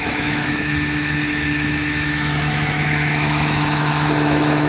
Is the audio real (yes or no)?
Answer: no